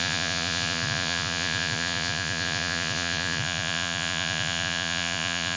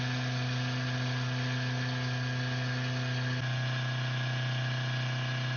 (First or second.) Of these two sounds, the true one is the second